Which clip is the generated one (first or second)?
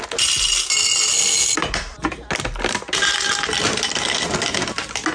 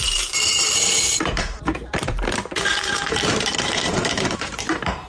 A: second